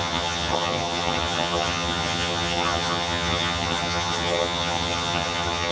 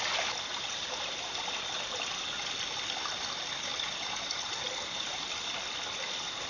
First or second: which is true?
second